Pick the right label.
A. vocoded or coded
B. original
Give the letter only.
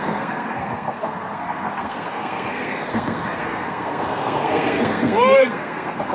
A